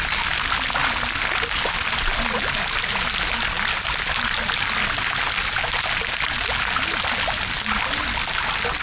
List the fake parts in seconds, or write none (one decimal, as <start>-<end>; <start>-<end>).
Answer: none